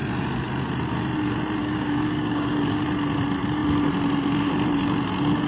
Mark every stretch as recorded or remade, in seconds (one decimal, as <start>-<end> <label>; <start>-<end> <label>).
0.0-1.6 recorded; 1.6-2.8 remade; 2.8-5.5 recorded